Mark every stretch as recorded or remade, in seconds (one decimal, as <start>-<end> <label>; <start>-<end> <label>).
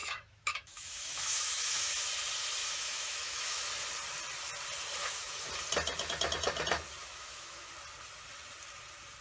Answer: 0.0-2.0 remade; 2.0-2.6 recorded; 2.6-3.6 remade; 3.6-5.0 recorded; 5.0-5.5 remade; 5.5-7.0 recorded; 7.0-7.7 remade; 7.7-9.2 recorded